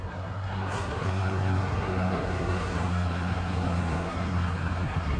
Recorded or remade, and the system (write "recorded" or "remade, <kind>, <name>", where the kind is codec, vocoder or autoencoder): remade, codec, SNAC